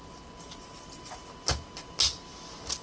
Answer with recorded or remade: recorded